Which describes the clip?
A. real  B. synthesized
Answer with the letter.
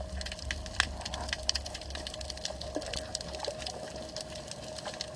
A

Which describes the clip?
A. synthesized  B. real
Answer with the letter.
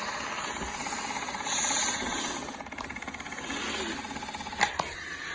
B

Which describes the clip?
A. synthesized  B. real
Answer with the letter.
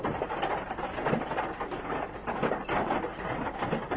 B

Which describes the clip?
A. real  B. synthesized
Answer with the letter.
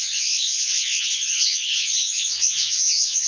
B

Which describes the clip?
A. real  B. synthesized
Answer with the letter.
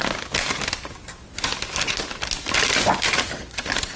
A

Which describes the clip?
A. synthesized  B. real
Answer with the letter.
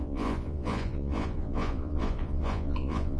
A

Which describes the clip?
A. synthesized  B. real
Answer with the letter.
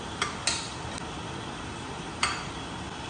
B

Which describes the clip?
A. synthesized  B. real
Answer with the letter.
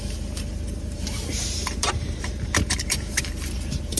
A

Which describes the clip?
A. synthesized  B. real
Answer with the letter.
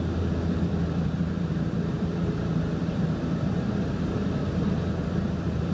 A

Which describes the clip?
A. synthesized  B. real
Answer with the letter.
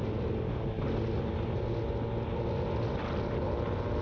B